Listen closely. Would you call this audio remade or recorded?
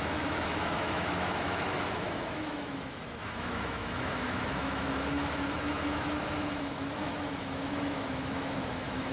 remade